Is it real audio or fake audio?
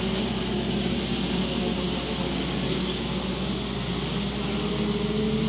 real